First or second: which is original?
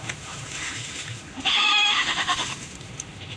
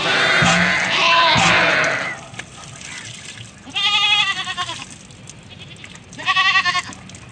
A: second